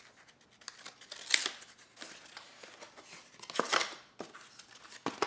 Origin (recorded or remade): recorded